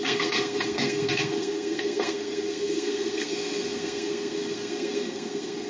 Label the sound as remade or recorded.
remade